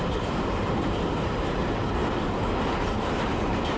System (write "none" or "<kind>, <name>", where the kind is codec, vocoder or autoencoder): vocoder, BigVGAN v2